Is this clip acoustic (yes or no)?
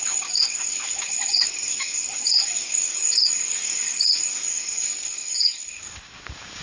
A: no